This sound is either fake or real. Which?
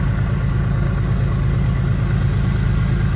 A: real